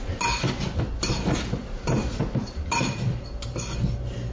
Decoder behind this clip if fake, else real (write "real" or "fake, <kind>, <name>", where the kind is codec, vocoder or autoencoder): real